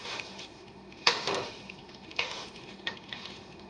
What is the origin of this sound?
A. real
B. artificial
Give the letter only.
B